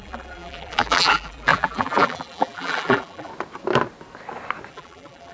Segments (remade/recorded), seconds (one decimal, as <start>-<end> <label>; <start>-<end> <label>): 0.0-3.3 remade; 3.3-4.7 recorded; 4.7-5.3 remade